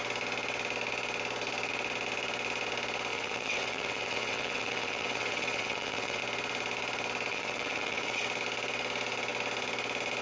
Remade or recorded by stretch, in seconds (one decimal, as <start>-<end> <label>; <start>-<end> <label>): 0.0-3.1 recorded; 3.1-6.2 remade; 6.2-7.3 recorded; 7.3-8.2 remade; 8.2-10.2 recorded